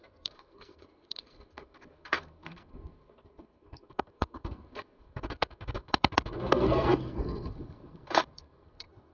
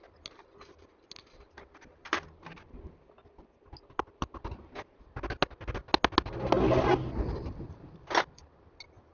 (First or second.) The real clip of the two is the second